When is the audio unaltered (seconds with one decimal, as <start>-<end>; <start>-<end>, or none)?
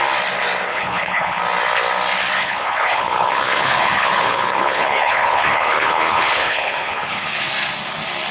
0.0-0.7; 1.4-2.4; 7.4-8.3